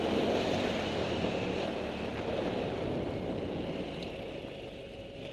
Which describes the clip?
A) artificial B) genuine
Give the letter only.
B